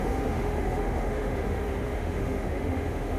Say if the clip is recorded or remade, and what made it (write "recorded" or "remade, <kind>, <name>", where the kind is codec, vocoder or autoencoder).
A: remade, autoencoder, DAC-VAE